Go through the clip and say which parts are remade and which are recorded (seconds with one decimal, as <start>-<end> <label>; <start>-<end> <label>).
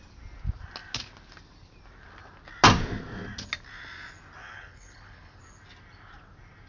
0.0-4.4 recorded; 4.4-5.4 remade; 5.4-6.7 recorded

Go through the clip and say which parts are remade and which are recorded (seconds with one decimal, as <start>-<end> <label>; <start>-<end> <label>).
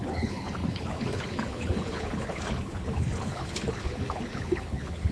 0.0-5.1 remade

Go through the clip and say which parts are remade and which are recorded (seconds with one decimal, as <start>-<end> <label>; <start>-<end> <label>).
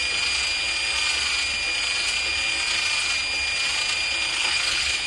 0.0-4.3 recorded; 4.3-5.1 remade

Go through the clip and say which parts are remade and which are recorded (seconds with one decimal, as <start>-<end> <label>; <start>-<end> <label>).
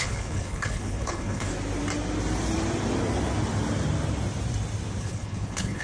0.0-1.5 remade; 1.5-5.0 recorded; 5.0-5.8 remade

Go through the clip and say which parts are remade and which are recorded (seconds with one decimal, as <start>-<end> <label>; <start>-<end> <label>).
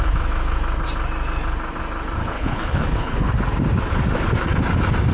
0.0-2.2 recorded; 2.2-3.3 remade; 3.3-5.1 recorded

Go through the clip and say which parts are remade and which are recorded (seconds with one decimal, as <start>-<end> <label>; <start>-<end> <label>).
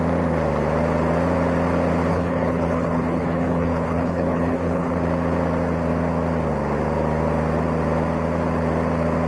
0.0-2.1 recorded; 2.1-4.9 remade; 4.9-9.3 recorded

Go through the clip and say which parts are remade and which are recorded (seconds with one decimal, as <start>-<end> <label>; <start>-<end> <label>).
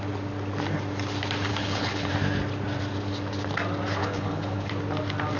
0.0-1.5 recorded; 1.5-2.1 remade; 2.1-4.0 recorded; 4.0-4.7 remade; 4.7-5.4 recorded